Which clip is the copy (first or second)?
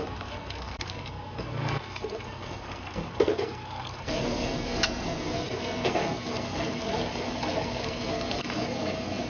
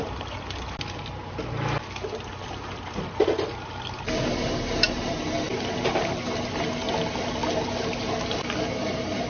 first